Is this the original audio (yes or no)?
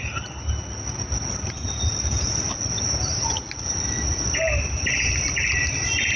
yes